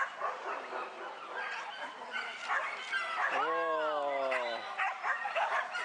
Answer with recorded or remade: remade